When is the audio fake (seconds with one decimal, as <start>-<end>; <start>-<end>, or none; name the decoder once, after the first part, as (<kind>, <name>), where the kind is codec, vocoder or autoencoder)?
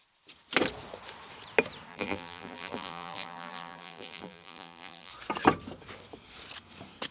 1.9-5.1 (vocoder, BigVGAN v2)